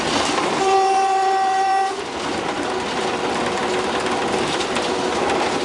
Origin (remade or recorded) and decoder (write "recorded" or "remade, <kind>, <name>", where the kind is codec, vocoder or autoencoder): remade, vocoder, BigVGAN v2